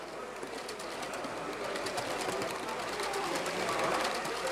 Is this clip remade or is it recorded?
recorded